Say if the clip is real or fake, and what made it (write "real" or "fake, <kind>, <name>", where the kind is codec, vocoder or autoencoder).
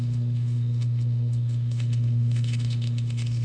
fake, autoencoder, DAC-VAE